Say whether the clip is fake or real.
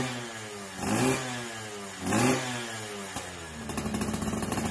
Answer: real